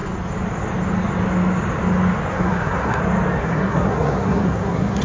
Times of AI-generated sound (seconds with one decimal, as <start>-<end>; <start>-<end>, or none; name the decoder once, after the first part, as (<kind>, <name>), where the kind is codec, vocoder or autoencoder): 2.3-3.0 (codec, SNAC); 3.4-5.0

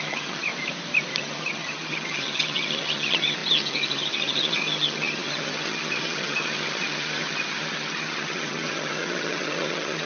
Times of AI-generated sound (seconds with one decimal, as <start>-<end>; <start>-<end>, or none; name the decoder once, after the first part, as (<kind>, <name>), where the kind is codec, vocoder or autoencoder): 0.0-0.5 (vocoder, HiFi-GAN); 1.2-10.1